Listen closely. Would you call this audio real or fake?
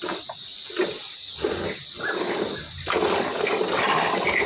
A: real